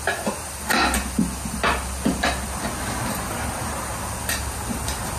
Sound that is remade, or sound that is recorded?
recorded